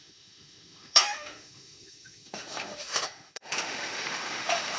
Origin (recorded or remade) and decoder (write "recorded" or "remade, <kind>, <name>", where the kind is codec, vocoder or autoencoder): remade, autoencoder, DAC-VAE